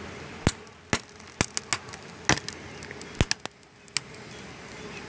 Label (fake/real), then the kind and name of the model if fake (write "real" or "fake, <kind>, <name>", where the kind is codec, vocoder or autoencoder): real